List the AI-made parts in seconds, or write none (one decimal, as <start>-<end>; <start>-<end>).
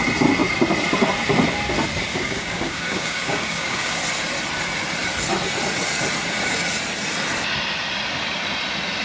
2.1-4.0